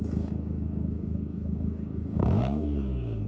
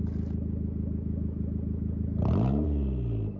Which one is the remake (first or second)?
first